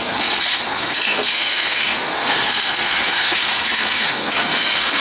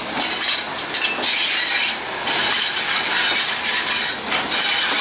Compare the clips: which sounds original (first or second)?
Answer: second